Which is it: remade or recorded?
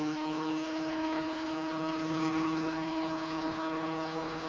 remade